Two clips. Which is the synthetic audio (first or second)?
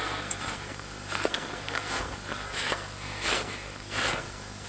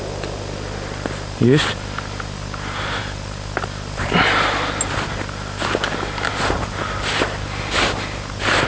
first